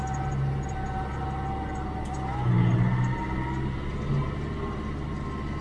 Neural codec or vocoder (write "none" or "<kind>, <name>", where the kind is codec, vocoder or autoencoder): none